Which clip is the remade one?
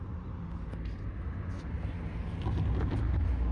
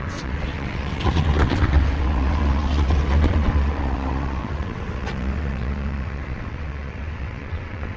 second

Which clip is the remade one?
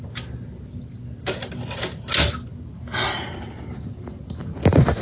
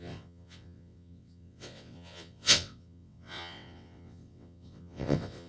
second